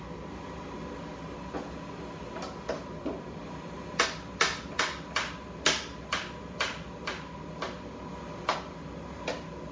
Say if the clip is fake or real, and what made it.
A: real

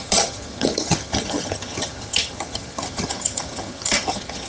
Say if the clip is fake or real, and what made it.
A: fake, vocoder, HiFi-GAN